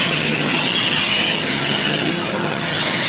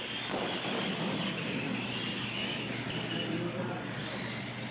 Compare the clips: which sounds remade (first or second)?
first